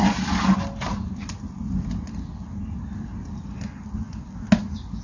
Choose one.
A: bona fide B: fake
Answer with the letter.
A